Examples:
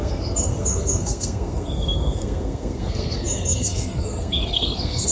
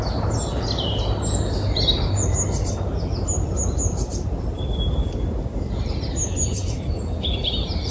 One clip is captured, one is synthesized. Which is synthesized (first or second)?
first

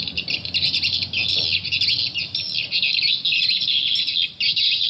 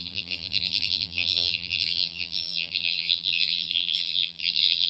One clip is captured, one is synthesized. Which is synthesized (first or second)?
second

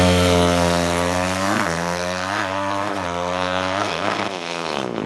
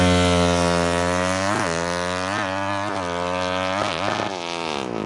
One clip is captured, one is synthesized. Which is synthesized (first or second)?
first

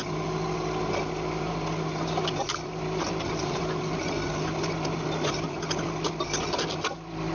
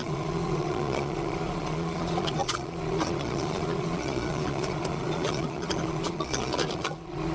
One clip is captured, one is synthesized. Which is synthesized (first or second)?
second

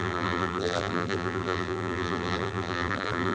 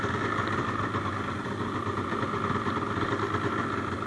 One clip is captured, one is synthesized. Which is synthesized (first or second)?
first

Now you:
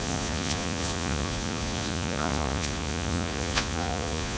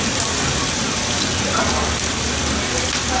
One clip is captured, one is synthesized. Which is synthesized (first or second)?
first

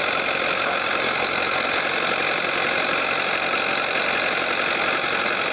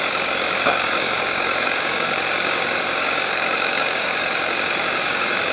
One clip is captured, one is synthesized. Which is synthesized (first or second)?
second